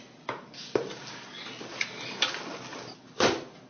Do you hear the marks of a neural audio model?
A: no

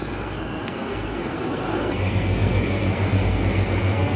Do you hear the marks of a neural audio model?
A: yes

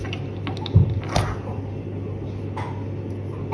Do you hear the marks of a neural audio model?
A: no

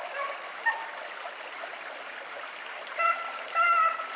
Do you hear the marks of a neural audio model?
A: no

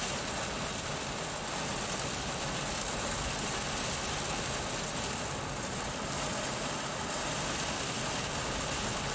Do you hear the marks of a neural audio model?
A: no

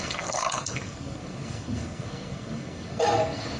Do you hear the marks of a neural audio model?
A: yes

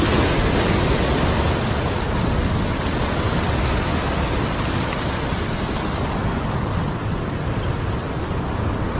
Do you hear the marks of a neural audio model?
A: no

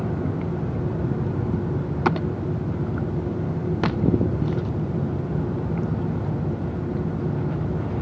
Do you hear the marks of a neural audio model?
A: no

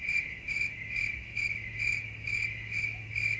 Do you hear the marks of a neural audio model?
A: yes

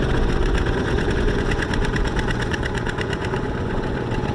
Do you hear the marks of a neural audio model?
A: yes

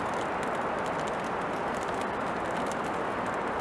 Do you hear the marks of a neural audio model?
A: no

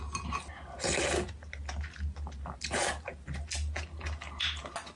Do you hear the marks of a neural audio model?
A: no